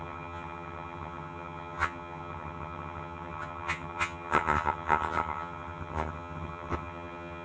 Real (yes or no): no